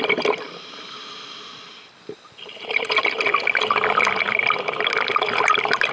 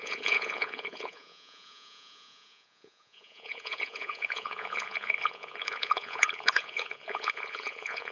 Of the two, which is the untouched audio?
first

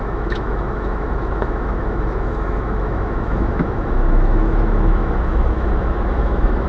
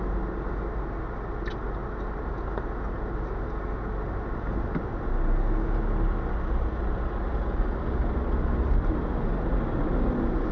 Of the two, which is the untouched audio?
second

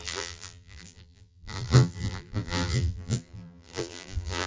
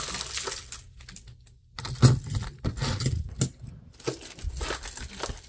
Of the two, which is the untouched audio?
second